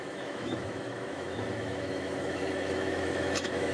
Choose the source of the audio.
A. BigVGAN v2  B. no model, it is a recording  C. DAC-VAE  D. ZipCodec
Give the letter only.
C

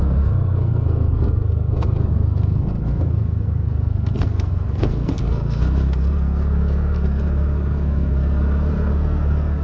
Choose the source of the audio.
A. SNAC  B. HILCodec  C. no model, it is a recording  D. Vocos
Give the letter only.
A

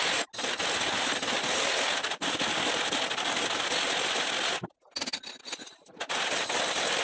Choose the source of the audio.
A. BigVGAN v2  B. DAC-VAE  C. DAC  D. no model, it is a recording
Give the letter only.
D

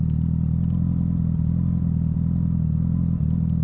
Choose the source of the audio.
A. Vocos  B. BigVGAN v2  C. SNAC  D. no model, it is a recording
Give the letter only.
B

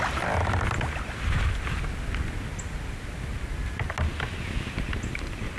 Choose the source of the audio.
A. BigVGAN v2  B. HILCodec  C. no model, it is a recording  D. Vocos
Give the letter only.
C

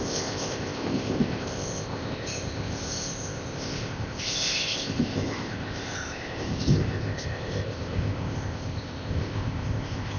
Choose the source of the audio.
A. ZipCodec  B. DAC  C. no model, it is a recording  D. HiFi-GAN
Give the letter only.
A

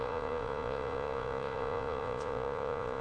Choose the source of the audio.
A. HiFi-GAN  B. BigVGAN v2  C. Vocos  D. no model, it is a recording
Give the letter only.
C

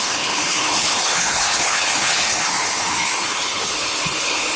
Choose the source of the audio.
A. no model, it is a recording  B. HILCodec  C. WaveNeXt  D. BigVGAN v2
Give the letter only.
B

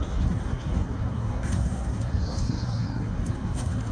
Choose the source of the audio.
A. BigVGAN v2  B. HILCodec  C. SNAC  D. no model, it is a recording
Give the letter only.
C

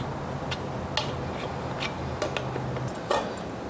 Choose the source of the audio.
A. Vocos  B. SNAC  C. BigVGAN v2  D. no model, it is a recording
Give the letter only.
D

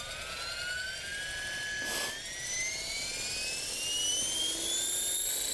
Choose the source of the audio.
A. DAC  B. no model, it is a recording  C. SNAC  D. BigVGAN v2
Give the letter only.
B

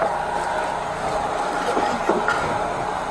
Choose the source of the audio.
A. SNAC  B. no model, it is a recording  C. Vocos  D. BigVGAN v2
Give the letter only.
B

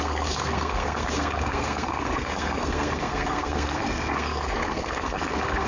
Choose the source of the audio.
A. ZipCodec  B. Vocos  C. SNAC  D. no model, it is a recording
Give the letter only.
C